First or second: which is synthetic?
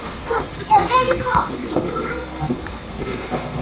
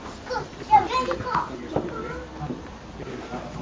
first